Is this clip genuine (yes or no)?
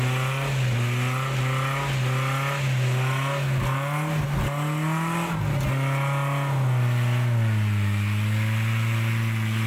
yes